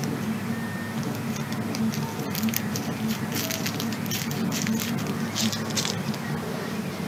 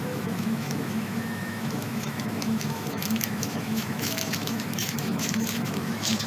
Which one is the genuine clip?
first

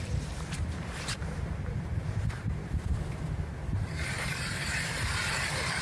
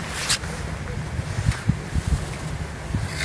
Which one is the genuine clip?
second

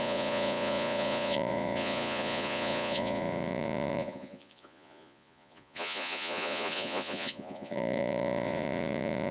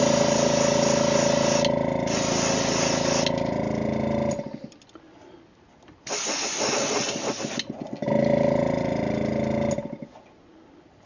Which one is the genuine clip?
second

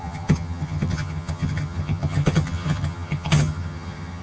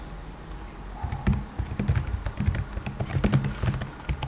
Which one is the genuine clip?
second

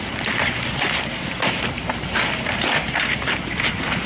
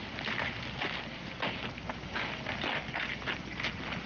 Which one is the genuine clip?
second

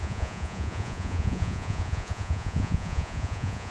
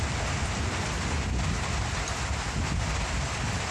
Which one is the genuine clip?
second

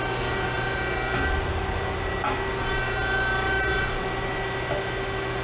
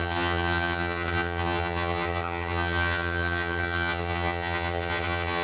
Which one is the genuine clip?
first